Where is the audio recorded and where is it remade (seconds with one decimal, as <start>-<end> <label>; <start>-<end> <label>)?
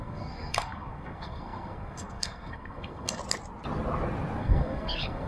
0.0-3.2 remade; 3.2-4.4 recorded; 4.4-5.3 remade